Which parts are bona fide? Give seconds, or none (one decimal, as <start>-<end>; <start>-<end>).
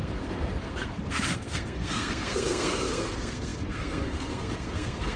none